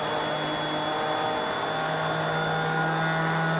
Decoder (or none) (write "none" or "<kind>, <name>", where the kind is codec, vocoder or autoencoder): none